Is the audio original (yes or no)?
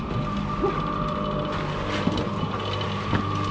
yes